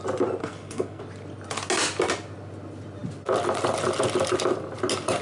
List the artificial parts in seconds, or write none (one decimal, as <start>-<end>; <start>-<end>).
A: 0.4-1.0